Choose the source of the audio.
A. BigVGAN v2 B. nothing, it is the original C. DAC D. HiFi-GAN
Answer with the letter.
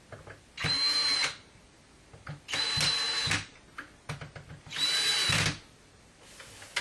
B